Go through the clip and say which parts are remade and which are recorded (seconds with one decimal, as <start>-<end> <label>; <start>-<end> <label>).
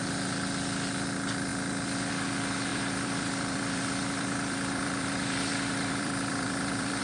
0.0-2.7 recorded; 2.7-7.0 remade